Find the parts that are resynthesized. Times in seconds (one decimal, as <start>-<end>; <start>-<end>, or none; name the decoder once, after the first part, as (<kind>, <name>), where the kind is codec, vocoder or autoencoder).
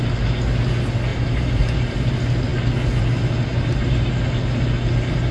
1.1-2.1 (vocoder, BigVGAN v2); 3.5-4.1